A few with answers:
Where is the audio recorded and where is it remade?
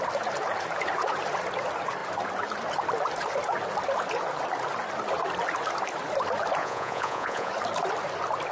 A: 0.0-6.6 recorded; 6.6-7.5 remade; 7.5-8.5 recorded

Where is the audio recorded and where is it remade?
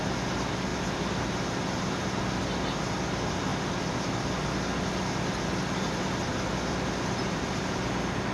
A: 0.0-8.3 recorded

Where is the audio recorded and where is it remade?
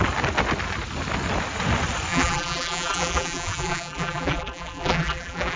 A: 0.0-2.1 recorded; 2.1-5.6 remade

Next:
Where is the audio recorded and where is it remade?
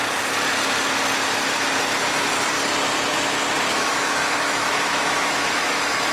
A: 0.0-3.7 recorded; 3.7-6.1 remade